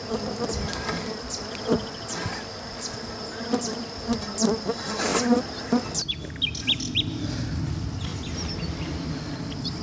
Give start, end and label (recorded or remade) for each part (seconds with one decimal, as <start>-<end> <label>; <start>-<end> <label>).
0.0-9.8 recorded